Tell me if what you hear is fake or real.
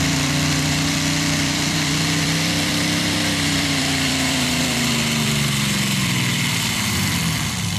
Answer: fake